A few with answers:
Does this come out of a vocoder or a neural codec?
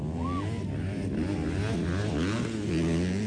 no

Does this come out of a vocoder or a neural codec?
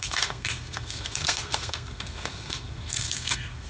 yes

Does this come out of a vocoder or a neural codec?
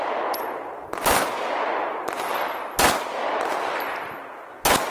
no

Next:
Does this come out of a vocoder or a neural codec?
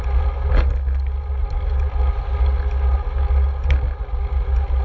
no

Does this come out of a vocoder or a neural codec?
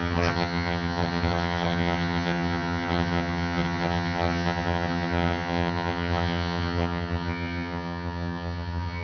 yes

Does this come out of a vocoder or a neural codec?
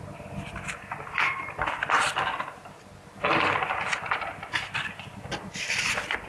no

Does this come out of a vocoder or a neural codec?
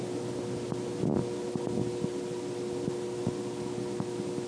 no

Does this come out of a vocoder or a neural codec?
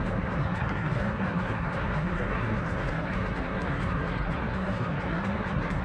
yes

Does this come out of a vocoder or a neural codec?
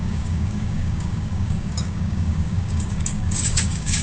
yes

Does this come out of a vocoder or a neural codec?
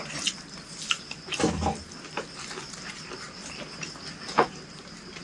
no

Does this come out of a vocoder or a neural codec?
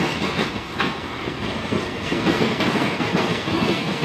yes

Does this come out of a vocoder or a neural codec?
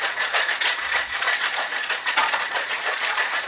yes